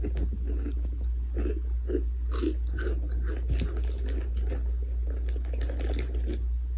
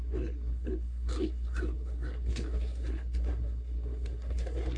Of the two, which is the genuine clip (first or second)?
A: first